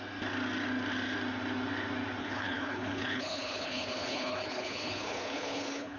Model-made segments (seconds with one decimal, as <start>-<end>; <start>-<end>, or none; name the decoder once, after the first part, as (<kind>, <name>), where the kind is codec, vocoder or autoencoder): 2.2-6.0 (codec, HILCodec)